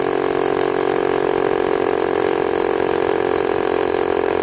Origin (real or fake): real